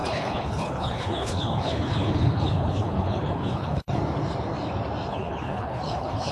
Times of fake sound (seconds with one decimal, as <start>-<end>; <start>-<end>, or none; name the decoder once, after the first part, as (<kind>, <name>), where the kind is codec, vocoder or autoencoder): 0.0-4.0 (codec, HILCodec); 5.1-6.3